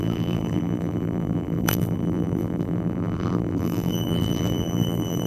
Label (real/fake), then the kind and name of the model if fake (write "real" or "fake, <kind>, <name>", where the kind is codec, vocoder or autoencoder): fake, vocoder, BigVGAN v2